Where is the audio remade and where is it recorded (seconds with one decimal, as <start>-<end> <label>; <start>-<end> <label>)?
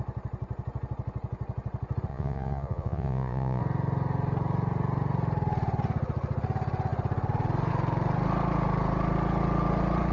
0.0-2.1 recorded; 2.1-3.6 remade; 3.6-10.1 recorded